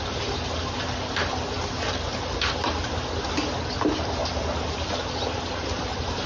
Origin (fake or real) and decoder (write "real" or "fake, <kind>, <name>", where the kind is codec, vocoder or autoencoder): real